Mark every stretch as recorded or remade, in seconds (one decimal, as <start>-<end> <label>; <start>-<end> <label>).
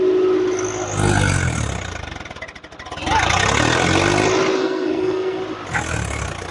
0.0-4.6 recorded; 4.6-5.4 remade; 5.4-6.5 recorded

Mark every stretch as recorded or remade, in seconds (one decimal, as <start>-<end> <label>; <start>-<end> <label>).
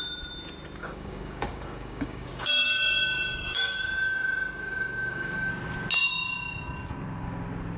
0.0-0.8 recorded; 0.8-5.5 remade; 5.5-7.8 recorded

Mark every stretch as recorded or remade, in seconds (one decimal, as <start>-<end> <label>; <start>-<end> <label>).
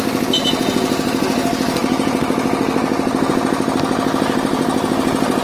0.0-5.4 recorded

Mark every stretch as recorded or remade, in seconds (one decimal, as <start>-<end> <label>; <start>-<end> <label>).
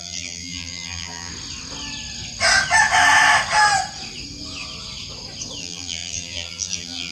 0.0-1.3 remade; 1.3-5.6 recorded; 5.6-7.1 remade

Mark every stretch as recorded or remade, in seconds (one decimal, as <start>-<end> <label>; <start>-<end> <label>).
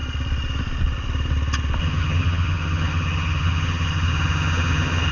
0.0-1.8 recorded; 1.8-5.1 remade